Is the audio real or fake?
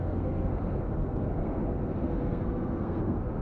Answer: fake